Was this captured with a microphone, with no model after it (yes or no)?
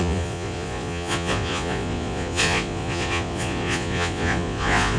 no